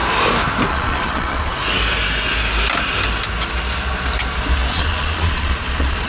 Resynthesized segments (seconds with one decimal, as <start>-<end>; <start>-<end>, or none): 0.7-1.6; 4.7-6.1